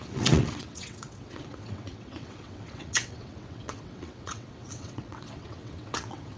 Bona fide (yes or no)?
no